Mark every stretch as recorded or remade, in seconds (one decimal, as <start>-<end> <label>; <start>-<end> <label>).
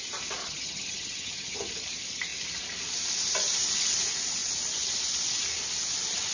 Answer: 0.0-0.4 recorded; 0.4-1.7 remade; 1.7-6.3 recorded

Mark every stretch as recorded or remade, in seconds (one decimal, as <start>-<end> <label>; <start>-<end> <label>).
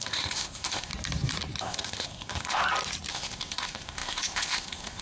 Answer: 0.0-0.9 remade; 0.9-1.6 recorded; 1.6-2.6 remade; 2.6-3.1 recorded; 3.1-5.0 remade